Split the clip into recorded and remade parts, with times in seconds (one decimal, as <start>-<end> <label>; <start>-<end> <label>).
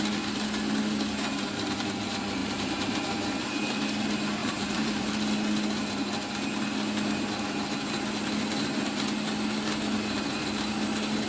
0.0-2.4 recorded; 2.4-3.1 remade; 3.1-4.4 recorded; 4.4-5.1 remade; 5.1-11.3 recorded